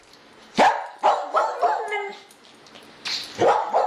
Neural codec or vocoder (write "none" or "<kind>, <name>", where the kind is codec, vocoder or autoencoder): none